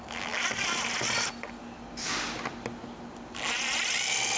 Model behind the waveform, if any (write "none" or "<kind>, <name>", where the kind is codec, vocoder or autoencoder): none